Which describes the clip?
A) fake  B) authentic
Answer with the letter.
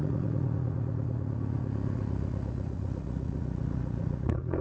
A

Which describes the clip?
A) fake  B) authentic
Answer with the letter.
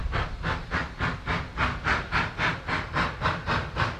B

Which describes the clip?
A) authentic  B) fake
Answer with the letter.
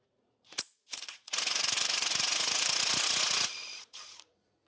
B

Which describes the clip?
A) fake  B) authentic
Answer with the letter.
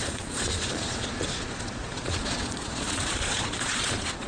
A